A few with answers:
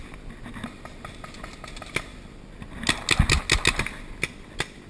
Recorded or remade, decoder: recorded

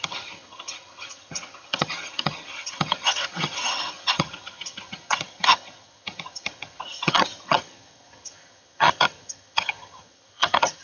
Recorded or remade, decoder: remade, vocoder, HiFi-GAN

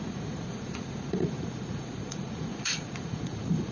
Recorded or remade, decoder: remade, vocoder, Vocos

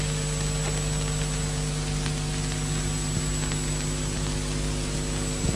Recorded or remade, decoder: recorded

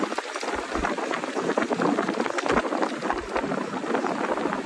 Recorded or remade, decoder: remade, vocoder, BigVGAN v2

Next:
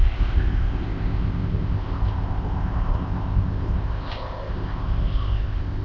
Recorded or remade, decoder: remade, codec, ZipCodec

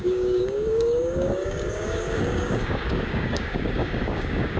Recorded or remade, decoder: remade, codec, DAC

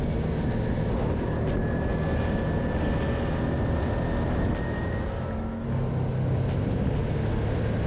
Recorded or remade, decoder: recorded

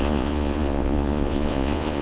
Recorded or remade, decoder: remade, vocoder, Vocos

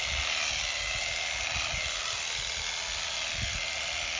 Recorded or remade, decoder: recorded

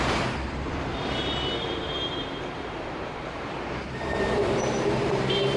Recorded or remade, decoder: remade, vocoder, BigVGAN v2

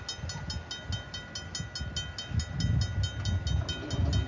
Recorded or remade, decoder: recorded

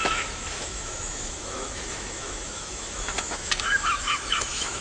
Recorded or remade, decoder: remade, autoencoder, DAC-VAE